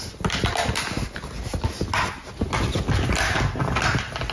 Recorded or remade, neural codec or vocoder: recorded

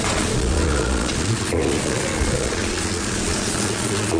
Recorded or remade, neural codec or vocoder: remade, vocoder, Vocos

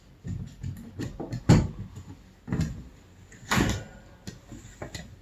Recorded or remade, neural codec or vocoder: recorded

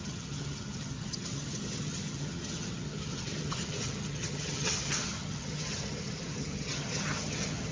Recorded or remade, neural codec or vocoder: remade, vocoder, HiFi-GAN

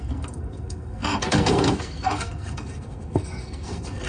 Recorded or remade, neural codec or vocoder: remade, codec, SNAC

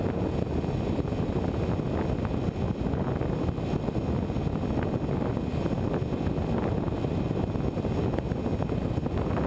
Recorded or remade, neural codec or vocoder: recorded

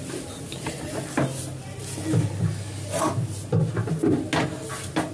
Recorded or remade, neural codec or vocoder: recorded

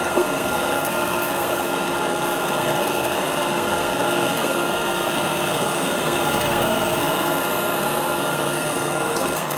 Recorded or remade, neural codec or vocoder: remade, codec, SNAC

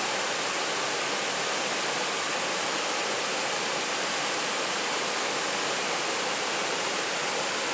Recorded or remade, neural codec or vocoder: recorded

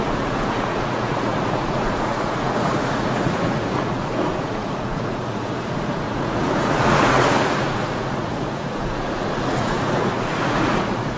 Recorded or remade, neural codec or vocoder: remade, vocoder, Vocos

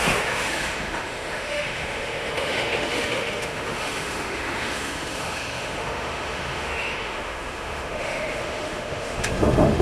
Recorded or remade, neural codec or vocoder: remade, autoencoder, DAC-VAE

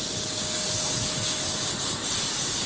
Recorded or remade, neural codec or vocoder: recorded